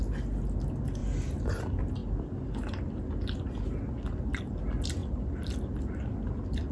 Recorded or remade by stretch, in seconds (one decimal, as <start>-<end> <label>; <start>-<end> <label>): 0.0-6.7 recorded